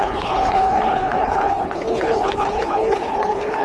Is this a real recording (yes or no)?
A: no